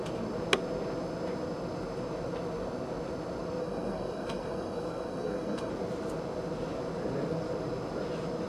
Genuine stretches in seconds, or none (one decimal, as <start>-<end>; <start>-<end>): 0.0-3.6; 5.7-8.5